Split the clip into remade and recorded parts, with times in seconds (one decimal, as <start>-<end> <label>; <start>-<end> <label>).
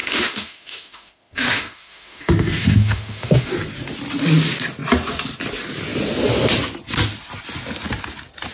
0.0-3.5 remade; 3.5-8.5 recorded